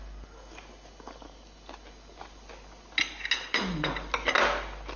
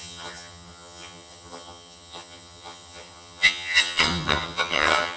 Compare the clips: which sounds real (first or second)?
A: first